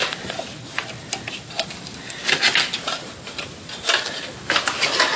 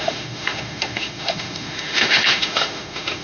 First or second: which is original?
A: first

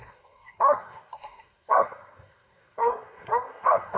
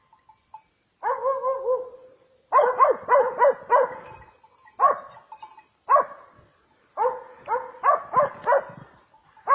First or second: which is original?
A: second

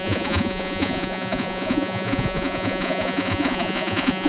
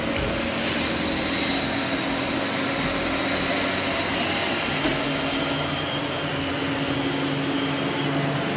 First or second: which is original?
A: second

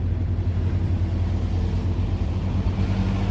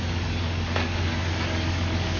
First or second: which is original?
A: first